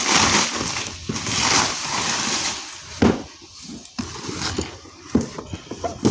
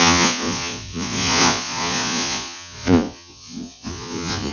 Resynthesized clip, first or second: second